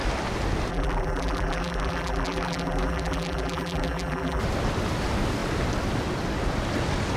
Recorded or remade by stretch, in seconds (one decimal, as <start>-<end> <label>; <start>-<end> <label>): 0.0-0.7 recorded; 0.7-4.4 remade; 4.4-7.2 recorded